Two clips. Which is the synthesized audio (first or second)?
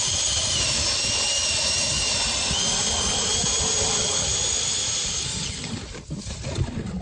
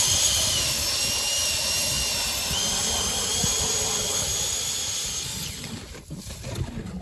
first